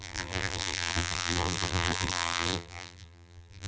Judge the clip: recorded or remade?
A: remade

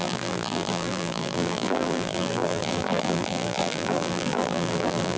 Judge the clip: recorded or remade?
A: remade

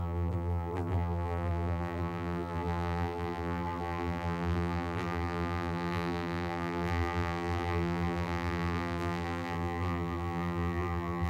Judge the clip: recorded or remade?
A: remade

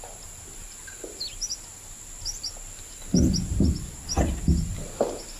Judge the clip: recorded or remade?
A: recorded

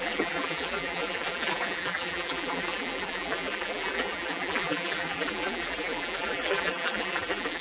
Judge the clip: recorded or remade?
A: remade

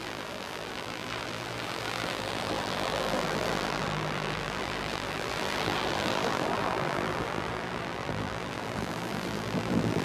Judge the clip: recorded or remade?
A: remade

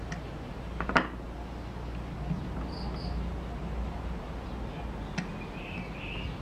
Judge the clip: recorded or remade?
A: recorded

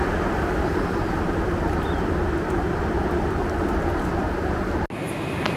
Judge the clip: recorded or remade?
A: recorded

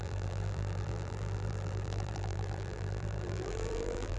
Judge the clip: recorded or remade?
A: remade